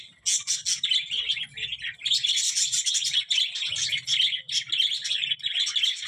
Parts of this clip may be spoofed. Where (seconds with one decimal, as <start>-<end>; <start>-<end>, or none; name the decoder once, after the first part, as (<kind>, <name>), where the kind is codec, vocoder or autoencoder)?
none